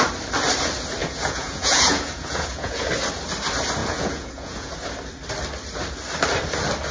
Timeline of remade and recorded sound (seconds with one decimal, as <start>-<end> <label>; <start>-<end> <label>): 0.0-1.0 recorded; 1.0-2.9 remade; 2.9-3.8 recorded; 3.8-4.8 remade; 4.8-6.9 recorded